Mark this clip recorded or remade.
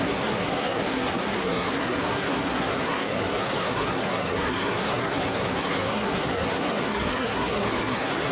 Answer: remade